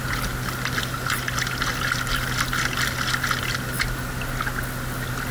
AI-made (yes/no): no